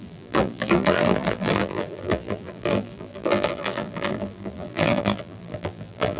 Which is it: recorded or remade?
remade